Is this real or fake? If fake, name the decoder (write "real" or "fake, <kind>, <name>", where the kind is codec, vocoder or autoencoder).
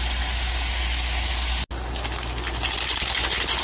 real